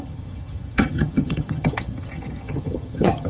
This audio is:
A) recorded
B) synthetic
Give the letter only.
B